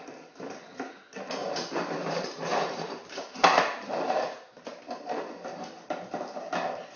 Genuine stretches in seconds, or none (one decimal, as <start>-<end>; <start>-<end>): 0.0-1.4; 5.6-7.0